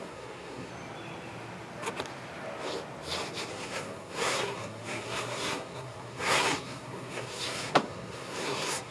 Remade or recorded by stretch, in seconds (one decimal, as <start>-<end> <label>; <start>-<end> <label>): 0.0-0.7 remade; 0.7-3.5 recorded; 3.5-8.9 remade